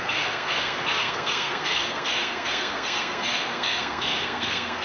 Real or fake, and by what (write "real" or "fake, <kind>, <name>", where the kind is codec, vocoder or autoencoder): fake, codec, SNAC